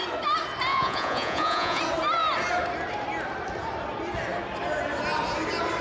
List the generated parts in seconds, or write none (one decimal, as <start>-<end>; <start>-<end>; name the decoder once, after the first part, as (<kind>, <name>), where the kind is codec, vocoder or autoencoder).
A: 0.7-1.8 (vocoder, Vocos)